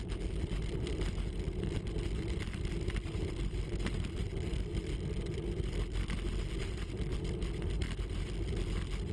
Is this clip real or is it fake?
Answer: fake